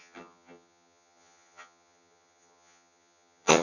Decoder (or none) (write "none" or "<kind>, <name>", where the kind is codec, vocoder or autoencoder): vocoder, HiFi-GAN